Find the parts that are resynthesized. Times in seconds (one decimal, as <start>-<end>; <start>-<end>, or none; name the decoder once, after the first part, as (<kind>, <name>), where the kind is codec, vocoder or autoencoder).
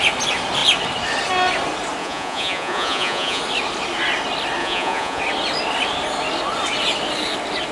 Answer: 2.0-3.4 (vocoder, Vocos); 4.6-5.2